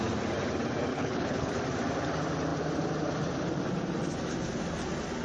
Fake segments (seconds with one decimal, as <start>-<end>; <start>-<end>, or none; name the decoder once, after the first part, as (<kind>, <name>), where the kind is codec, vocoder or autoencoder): 0.9-1.5 (codec, HILCodec)